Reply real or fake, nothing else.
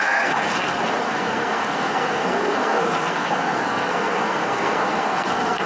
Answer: fake